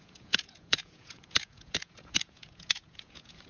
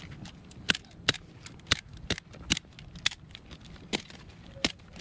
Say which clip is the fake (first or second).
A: first